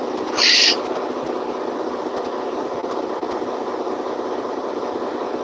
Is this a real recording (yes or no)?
yes